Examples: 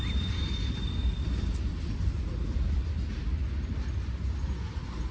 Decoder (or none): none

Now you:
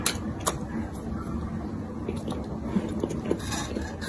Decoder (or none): none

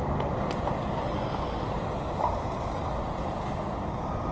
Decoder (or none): none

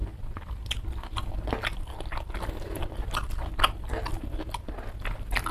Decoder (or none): none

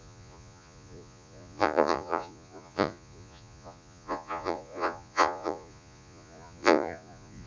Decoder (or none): vocoder, Vocos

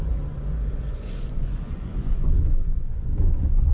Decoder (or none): vocoder, Vocos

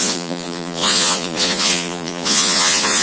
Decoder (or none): vocoder, Vocos